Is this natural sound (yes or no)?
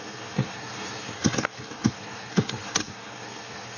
no